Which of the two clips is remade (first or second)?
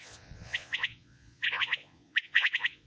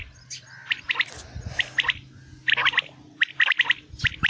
first